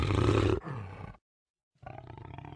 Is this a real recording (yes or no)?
yes